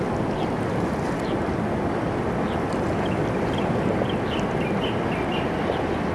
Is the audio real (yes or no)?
yes